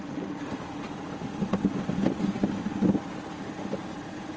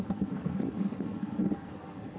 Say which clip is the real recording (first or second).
first